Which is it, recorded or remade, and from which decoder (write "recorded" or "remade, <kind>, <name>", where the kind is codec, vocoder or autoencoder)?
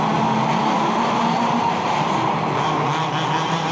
recorded